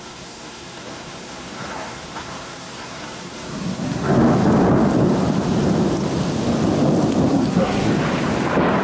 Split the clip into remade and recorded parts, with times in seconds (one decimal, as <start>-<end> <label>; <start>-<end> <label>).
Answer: 0.0-4.1 remade; 4.1-7.3 recorded; 7.3-7.9 remade; 7.9-8.8 recorded